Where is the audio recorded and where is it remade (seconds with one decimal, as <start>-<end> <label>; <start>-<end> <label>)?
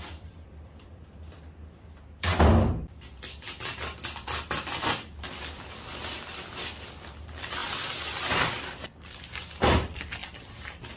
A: 0.0-2.3 remade; 2.3-4.6 recorded; 4.6-7.6 remade; 7.6-9.5 recorded; 9.5-11.0 remade